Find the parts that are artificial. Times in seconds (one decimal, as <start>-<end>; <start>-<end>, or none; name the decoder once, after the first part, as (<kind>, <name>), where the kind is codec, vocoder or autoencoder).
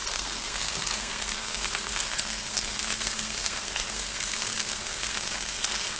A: 0.0-6.0 (codec, SNAC)